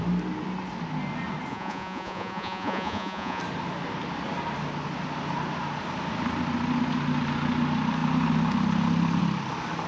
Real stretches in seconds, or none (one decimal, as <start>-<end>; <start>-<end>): 0.0-1.5; 3.4-9.9